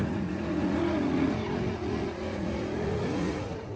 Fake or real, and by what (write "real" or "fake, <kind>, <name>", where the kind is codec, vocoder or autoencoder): fake, vocoder, Vocos